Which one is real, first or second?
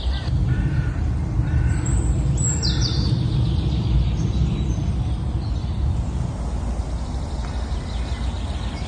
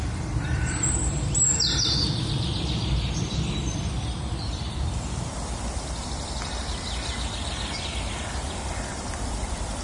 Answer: first